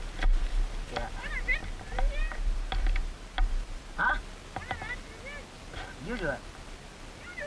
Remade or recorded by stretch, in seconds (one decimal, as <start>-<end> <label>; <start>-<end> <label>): 0.0-1.6 recorded; 1.6-4.2 remade; 4.2-7.5 recorded